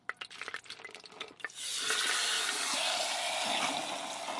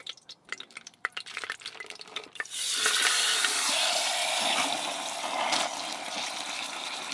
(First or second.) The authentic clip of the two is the first